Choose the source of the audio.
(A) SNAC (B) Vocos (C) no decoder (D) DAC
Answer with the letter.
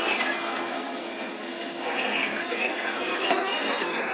A